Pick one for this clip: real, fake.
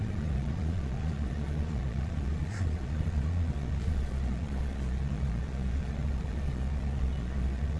fake